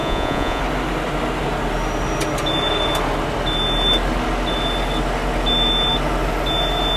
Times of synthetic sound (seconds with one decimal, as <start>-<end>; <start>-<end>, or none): 0.0-0.6